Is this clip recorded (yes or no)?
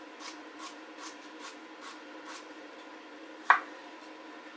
yes